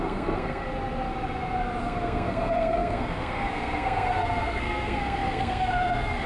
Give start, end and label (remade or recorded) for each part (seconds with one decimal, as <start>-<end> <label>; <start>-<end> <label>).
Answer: 0.0-0.7 remade; 0.7-1.8 recorded; 1.8-6.3 remade